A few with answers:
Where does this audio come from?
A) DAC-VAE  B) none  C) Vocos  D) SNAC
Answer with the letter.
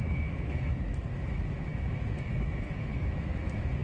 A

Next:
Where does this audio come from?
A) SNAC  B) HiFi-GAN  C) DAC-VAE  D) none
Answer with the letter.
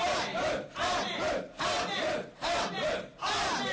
D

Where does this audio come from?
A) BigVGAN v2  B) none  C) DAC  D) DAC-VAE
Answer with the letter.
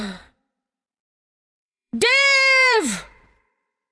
A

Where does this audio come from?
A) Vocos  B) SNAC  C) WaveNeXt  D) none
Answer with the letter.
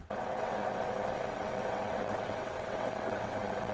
C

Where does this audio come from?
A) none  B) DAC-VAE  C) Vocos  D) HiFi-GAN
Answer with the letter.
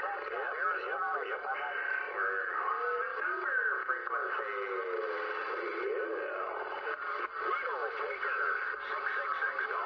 A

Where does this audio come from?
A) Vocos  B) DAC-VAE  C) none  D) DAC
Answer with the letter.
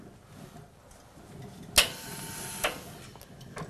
C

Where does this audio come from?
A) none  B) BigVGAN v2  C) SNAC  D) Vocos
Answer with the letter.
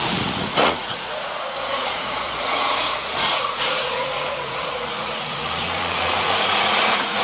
D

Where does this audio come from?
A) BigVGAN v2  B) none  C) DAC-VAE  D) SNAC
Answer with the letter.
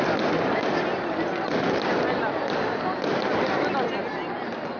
B